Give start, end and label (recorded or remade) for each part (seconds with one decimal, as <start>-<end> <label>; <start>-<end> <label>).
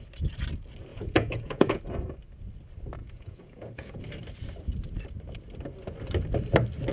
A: 0.0-0.9 recorded; 0.9-1.8 remade; 1.8-3.0 recorded; 3.0-4.0 remade; 4.0-6.9 recorded